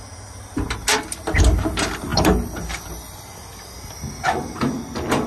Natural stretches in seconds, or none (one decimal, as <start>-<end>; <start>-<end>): 0.0-5.3